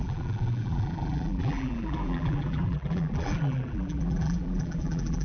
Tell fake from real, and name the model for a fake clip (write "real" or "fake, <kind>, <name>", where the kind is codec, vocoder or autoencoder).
fake, vocoder, BigVGAN v2